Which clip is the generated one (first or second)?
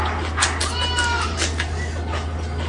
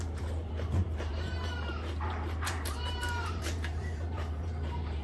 second